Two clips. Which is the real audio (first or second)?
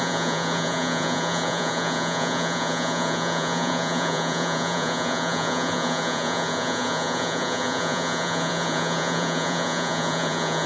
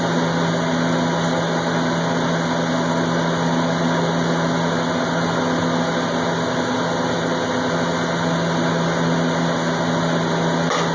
second